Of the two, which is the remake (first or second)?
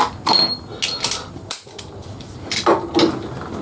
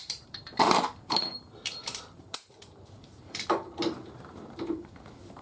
second